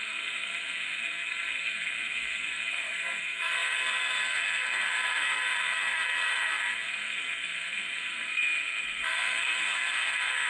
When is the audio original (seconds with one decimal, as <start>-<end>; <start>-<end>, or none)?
none